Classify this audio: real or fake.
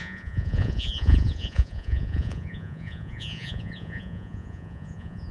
fake